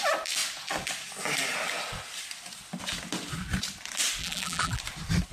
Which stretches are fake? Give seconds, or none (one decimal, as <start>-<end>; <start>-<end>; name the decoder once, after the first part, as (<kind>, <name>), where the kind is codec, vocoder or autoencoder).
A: 4.2-4.8 (vocoder, BigVGAN v2)